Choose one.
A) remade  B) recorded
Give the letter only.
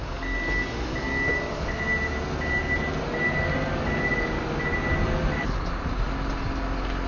B